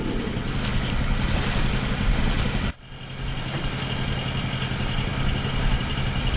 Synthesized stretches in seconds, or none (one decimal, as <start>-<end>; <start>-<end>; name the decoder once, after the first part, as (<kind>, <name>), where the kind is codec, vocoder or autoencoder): none